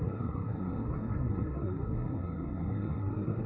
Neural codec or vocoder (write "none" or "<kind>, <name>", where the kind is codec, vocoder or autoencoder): codec, SNAC